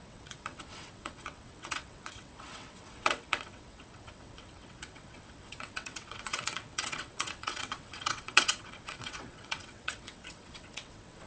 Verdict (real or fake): fake